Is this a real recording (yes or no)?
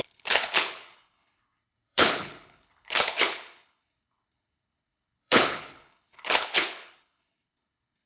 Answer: no